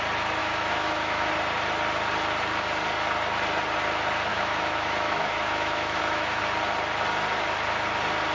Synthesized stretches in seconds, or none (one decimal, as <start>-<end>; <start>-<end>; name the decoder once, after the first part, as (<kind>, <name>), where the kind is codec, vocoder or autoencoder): 0.4-1.3 (autoencoder, DAC-VAE); 4.3-6.4